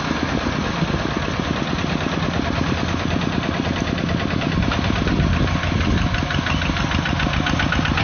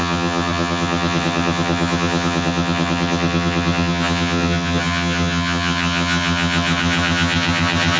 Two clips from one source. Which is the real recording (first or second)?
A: first